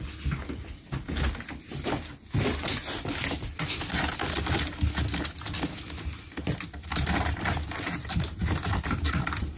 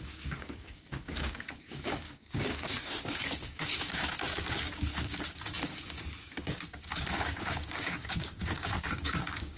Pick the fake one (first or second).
second